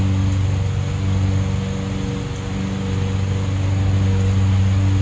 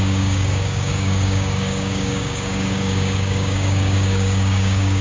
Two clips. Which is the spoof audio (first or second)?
second